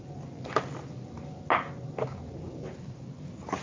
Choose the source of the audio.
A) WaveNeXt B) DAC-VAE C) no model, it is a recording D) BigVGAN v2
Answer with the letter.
C